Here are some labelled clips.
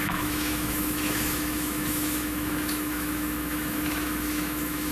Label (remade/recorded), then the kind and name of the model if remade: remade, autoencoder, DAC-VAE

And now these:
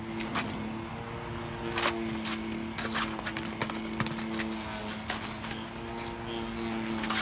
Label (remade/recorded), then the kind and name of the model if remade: recorded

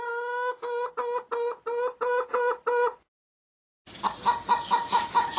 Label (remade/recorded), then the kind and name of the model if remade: recorded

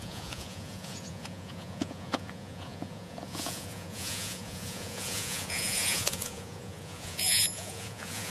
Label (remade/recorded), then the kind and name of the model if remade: remade, vocoder, Vocos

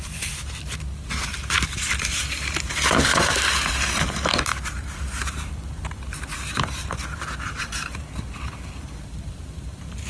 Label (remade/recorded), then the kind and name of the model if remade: remade, vocoder, BigVGAN v2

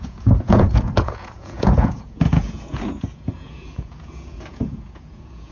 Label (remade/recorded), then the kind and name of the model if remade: remade, vocoder, Vocos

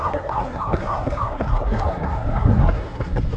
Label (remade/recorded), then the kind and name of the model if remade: remade, codec, SNAC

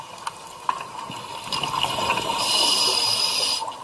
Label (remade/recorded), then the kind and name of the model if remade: recorded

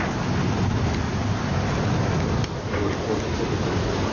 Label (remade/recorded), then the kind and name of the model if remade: recorded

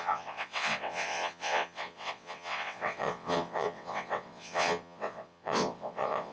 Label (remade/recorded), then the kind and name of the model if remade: remade, vocoder, WaveNeXt